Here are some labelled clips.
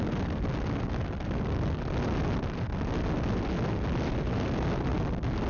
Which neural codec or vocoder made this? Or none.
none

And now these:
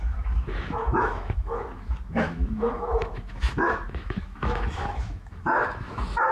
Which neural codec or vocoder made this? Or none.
autoencoder, DAC-VAE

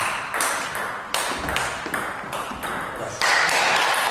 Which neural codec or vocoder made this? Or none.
none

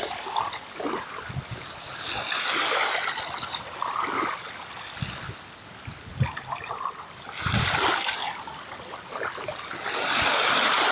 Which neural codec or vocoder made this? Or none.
none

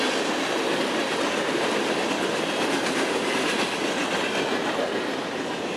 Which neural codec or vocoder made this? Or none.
none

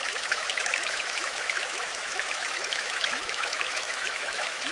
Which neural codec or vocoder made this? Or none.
autoencoder, DAC-VAE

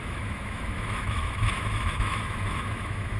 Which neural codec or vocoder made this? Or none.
autoencoder, DAC-VAE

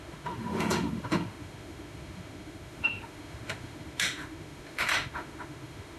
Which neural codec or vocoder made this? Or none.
autoencoder, DAC-VAE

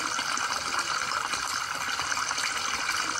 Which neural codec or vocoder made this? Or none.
none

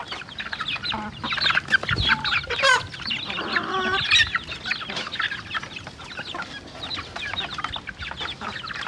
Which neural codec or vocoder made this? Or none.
none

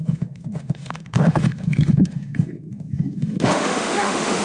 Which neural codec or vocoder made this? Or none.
autoencoder, DAC-VAE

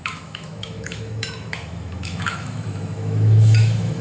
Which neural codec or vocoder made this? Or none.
autoencoder, DAC-VAE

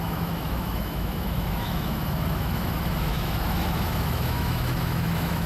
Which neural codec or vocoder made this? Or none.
autoencoder, DAC-VAE